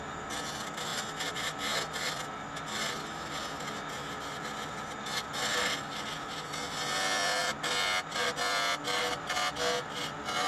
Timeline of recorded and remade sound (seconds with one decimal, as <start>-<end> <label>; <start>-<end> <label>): 0.0-10.5 recorded